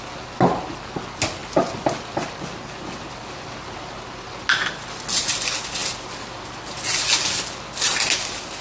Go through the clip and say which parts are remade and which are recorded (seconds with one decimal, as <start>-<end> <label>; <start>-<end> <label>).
0.0-8.6 recorded